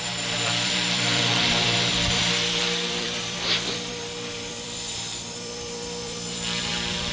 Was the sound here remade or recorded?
remade